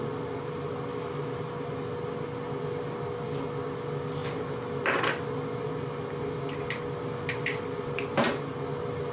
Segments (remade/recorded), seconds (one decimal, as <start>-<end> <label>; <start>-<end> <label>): 0.0-0.9 recorded; 0.9-1.4 remade; 1.4-9.1 recorded